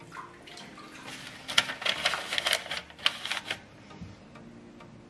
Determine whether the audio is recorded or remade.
recorded